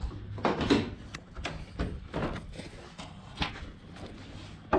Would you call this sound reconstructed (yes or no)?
no